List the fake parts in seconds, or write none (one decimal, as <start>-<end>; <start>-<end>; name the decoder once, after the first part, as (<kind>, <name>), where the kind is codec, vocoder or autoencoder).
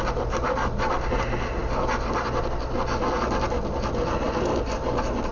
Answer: none